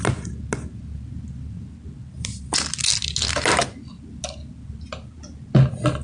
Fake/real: real